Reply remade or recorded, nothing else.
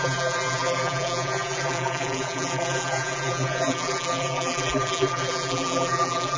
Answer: remade